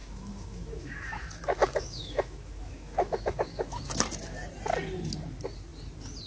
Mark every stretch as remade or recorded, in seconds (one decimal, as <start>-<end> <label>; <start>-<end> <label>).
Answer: 0.0-3.8 remade; 3.8-6.3 recorded